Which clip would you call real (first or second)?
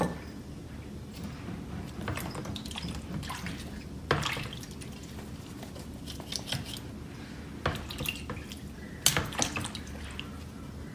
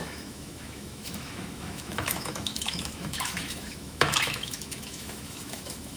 first